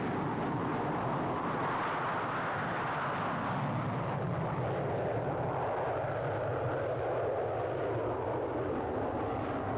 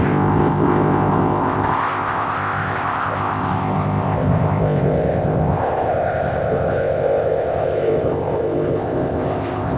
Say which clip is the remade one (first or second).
second